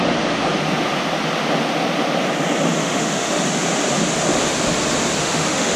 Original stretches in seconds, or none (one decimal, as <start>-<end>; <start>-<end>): 0.0-2.8; 3.4-5.2